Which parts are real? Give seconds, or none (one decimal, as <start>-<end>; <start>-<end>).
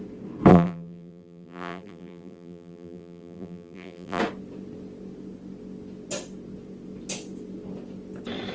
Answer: 0.0-0.5; 4.2-8.5